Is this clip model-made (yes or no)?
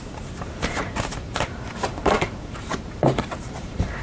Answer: yes